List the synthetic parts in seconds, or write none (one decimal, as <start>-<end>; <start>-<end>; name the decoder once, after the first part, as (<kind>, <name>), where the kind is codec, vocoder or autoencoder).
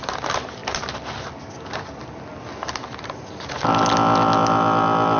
none